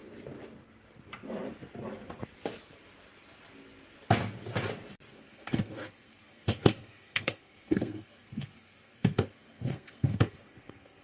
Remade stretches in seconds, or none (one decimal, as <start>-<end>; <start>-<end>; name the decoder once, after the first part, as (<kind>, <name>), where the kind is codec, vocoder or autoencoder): 5.1-11.0 (codec, SNAC)